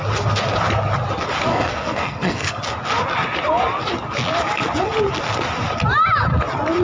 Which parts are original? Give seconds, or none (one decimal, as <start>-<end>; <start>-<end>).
0.0-1.5; 2.6-6.8